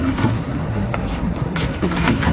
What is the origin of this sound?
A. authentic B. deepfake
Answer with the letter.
B